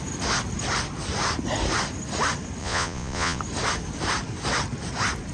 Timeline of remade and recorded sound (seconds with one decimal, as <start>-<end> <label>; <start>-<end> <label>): 0.0-2.6 recorded; 2.6-3.4 remade; 3.4-5.3 recorded